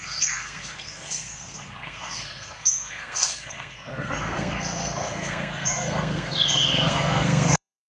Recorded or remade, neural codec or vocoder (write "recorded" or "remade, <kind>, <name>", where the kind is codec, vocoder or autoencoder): remade, codec, SNAC